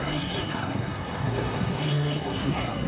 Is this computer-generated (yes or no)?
yes